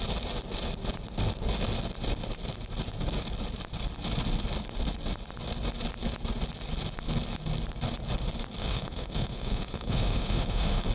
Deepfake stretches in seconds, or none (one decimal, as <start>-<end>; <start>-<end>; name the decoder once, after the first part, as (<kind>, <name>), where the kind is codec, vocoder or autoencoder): 8.6-10.9 (autoencoder, DAC-VAE)